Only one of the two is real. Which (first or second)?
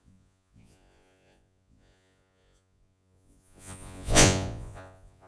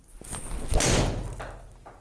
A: second